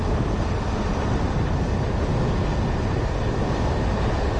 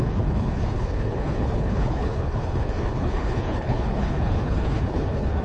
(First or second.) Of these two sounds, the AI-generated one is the second